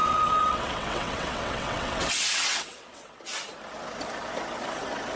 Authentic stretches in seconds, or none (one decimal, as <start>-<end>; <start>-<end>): 3.1-5.2